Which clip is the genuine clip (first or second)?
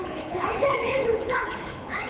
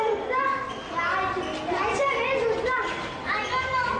second